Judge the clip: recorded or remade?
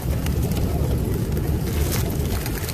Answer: recorded